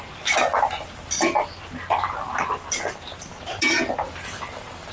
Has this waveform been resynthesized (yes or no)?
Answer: no